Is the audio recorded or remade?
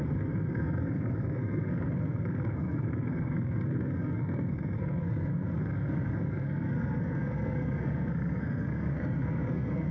remade